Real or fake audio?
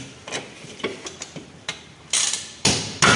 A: real